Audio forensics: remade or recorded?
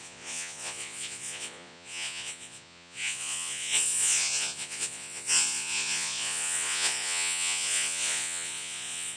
remade